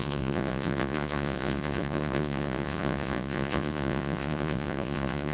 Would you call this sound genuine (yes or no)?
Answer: no